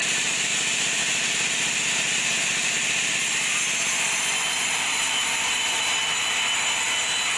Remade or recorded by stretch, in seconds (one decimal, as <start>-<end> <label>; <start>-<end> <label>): 0.0-0.5 recorded; 0.5-1.0 remade; 1.0-4.9 recorded; 4.9-5.8 remade; 5.8-7.4 recorded